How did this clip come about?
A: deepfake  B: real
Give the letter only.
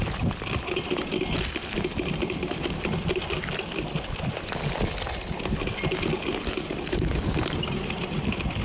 B